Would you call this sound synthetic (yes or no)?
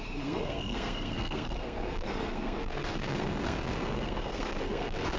yes